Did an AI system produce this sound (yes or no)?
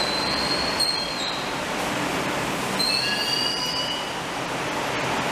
no